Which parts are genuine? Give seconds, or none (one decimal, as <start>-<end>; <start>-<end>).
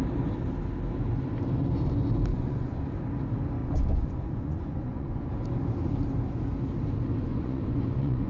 0.0-2.3; 2.9-3.6; 5.3-7.3